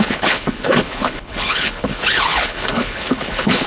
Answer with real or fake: fake